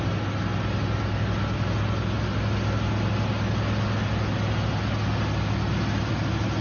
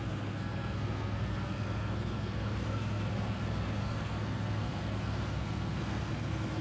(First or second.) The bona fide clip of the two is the first